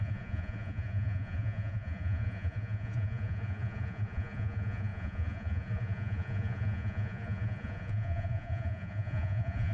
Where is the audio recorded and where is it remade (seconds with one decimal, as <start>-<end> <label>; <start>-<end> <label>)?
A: 0.0-9.7 remade